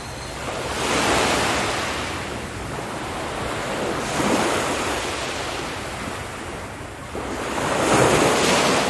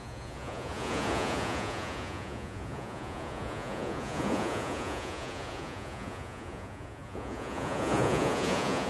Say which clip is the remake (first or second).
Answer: second